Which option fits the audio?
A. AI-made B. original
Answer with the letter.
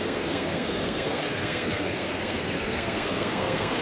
A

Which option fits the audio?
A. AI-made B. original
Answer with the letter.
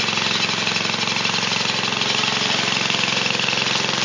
B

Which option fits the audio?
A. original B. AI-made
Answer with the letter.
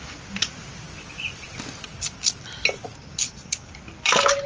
A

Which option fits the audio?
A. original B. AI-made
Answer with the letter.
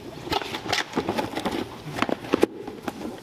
A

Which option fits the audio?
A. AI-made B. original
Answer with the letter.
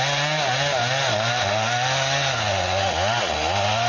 B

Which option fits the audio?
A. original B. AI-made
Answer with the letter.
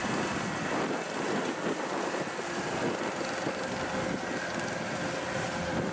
A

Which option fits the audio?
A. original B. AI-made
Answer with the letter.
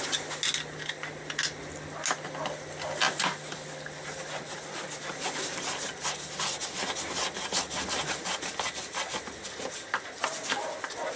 A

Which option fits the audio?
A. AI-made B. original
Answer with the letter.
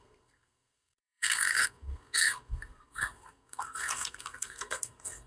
A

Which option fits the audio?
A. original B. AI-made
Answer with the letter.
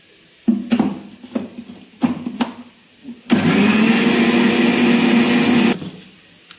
A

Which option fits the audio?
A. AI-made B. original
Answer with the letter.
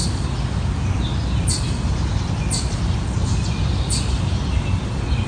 B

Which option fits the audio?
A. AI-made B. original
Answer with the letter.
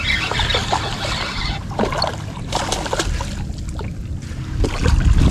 B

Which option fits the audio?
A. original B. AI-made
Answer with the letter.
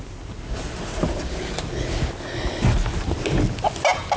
A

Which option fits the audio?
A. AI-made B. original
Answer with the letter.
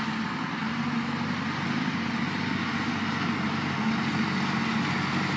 B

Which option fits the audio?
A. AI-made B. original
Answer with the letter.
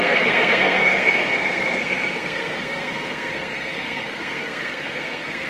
A